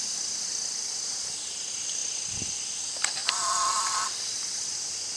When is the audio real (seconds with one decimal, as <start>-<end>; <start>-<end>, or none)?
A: 2.0-2.5; 3.2-4.4